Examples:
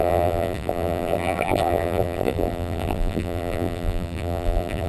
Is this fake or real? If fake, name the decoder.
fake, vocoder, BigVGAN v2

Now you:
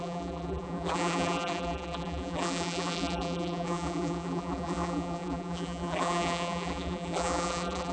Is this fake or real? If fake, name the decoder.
fake, vocoder, BigVGAN v2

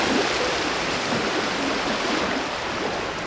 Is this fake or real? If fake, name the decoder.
fake, vocoder, BigVGAN v2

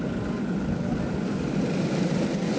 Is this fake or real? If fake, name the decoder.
real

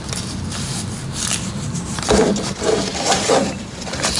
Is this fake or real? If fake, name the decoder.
fake, vocoder, BigVGAN v2